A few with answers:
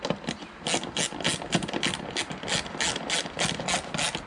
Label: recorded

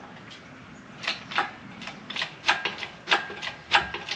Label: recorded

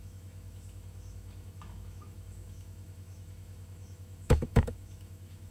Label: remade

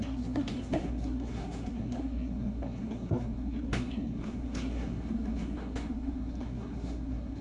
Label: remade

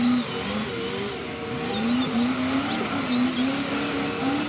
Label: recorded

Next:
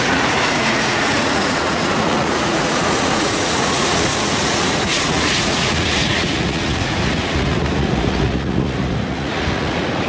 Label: remade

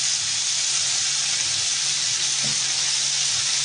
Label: recorded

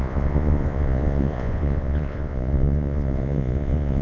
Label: remade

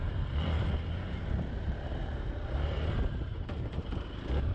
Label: remade